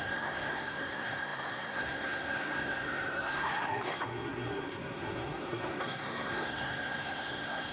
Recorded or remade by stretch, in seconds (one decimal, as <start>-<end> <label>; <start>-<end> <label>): 0.0-7.7 remade